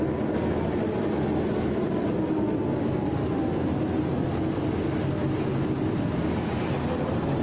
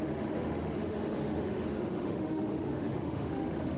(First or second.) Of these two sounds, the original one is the first